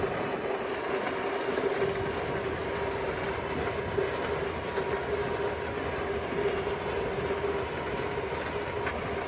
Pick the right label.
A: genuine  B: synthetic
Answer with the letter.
A